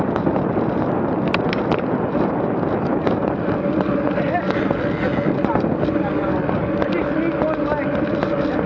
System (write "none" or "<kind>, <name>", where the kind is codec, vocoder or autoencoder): none